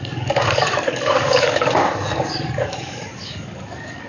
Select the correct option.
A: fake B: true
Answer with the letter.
A